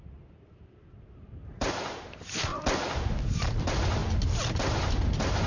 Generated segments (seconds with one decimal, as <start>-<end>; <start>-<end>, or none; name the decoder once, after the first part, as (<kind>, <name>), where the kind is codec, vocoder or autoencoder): 0.0-2.5 (vocoder, BigVGAN v2); 3.2-5.5